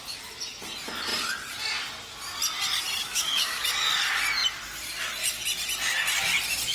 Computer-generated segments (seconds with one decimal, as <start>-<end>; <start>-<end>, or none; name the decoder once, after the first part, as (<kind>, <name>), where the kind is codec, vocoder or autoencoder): 3.0-3.7 (autoencoder, DAC-VAE)